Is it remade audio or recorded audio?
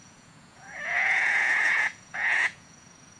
remade